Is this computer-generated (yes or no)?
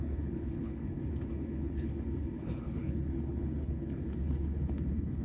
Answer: yes